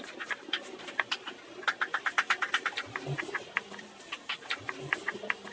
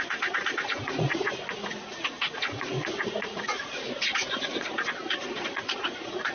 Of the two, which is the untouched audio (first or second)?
first